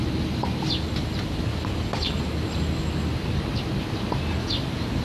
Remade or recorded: recorded